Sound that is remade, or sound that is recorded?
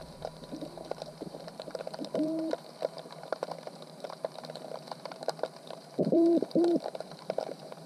remade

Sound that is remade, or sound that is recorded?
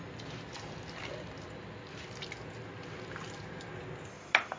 recorded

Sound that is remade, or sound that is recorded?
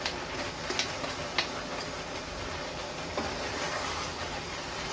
recorded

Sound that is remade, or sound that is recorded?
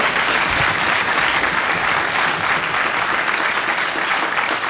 recorded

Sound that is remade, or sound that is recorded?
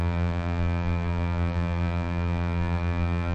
remade